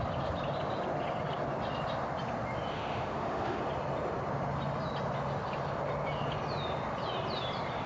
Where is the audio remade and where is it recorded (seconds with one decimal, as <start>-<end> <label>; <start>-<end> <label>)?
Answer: 0.0-2.7 recorded; 2.7-3.6 remade; 3.6-7.9 recorded